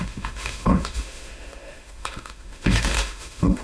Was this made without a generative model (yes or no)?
no